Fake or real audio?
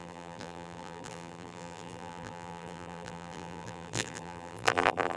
fake